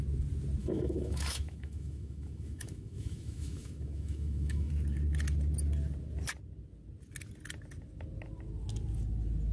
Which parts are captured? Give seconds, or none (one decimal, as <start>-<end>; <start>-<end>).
0.0-0.6; 4.7-9.5